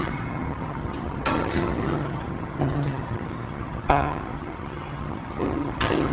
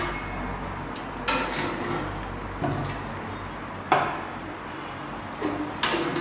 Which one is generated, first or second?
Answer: first